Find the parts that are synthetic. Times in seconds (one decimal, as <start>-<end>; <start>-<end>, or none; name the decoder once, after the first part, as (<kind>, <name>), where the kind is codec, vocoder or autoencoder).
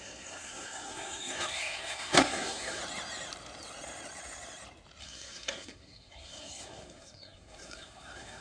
0.0-2.8 (codec, SNAC); 5.0-8.4